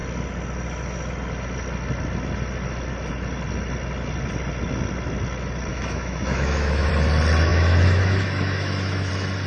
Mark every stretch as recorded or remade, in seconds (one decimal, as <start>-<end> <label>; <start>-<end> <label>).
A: 0.0-5.7 recorded; 5.7-6.9 remade; 6.9-7.5 recorded; 7.5-9.1 remade; 9.1-9.5 recorded